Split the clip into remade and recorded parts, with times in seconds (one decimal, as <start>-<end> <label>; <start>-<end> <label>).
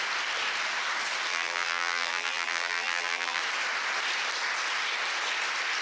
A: 0.0-1.3 recorded; 1.3-3.4 remade; 3.4-5.8 recorded